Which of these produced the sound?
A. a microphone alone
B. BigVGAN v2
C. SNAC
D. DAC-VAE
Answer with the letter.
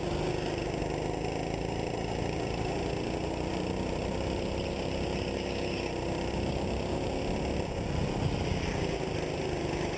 A